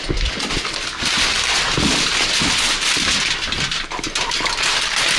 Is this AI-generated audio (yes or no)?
no